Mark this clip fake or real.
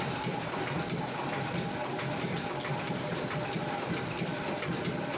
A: real